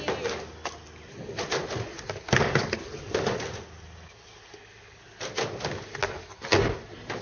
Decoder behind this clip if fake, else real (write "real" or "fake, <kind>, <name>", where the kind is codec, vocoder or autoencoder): real